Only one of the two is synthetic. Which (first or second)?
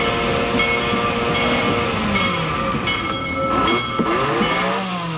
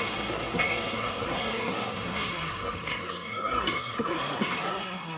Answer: second